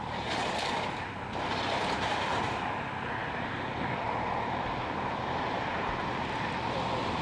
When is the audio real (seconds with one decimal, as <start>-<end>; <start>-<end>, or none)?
0.0-7.2